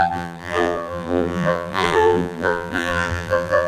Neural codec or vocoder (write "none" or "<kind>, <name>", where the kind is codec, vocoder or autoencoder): vocoder, BigVGAN v2